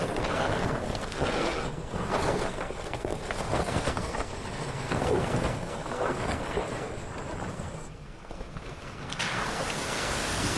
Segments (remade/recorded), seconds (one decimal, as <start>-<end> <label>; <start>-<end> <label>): 0.0-7.0 remade; 7.0-7.5 recorded; 7.5-10.6 remade